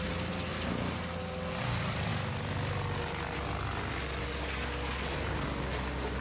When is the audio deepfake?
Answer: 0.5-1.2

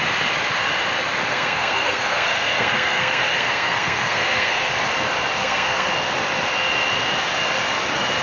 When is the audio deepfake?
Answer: 1.3-4.7; 5.4-5.9

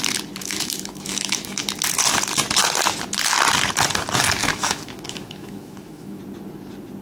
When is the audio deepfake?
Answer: 0.4-1.6; 4.4-6.2

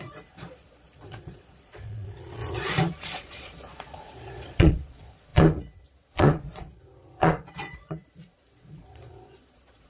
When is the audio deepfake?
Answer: 0.0-9.9

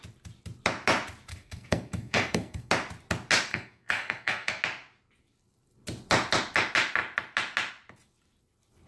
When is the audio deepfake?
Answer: 1.3-2.7; 3.5-4.6